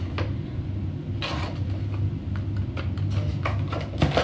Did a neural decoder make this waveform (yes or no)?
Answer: no